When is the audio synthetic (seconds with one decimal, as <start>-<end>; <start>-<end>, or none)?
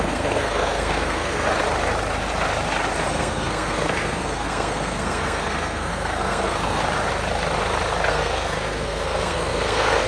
0.0-1.5; 3.1-6.8; 8.1-10.1